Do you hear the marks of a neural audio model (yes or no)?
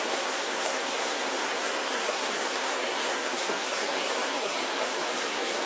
yes